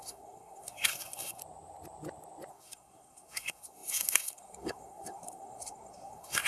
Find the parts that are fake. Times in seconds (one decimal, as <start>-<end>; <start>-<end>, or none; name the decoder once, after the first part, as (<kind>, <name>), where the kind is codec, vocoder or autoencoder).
0.0-1.4 (codec, SNAC); 2.5-6.5

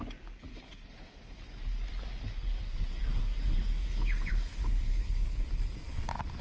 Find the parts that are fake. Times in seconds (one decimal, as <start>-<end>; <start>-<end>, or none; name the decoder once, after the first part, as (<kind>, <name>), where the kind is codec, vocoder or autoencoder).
0.5-1.4 (codec, HILCodec); 3.8-5.6

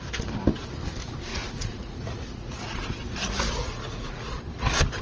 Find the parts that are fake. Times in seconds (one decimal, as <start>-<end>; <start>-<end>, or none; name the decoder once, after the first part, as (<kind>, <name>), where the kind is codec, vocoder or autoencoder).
1.3-4.3 (vocoder, Vocos)

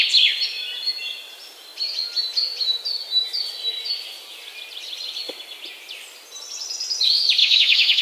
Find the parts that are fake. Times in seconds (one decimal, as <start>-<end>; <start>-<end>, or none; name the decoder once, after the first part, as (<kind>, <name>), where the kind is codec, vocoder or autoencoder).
7.4-8.0 (autoencoder, DAC-VAE)

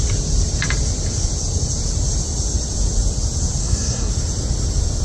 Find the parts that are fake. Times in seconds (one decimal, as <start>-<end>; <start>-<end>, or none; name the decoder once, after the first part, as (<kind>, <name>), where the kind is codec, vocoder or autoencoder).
3.6-4.1 (codec, SNAC)

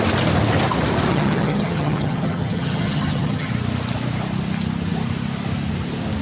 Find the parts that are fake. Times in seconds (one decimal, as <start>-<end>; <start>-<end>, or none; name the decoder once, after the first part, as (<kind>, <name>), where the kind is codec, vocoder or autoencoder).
1.1-3.5 (vocoder, HiFi-GAN)

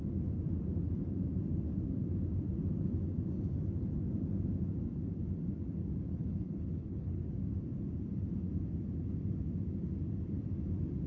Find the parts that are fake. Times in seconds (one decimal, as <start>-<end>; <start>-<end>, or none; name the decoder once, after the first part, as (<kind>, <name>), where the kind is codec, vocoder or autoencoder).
6.1-7.2 (codec, HILCodec)